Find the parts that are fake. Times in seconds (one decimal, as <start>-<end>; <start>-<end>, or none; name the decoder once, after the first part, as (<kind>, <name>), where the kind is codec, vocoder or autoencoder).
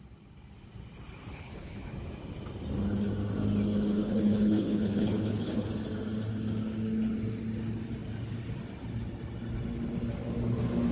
1.3-1.9 (codec, HILCodec); 3.9-5.7